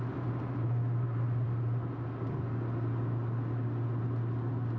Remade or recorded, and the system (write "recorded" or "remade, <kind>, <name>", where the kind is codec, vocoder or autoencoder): recorded